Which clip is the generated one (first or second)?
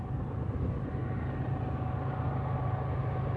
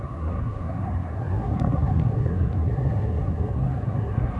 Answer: second